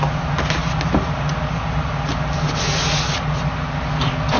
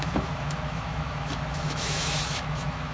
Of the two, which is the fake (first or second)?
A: second